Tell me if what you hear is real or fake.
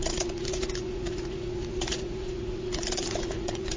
fake